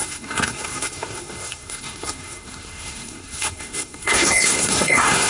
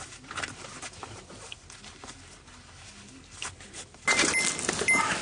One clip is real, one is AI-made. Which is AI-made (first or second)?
first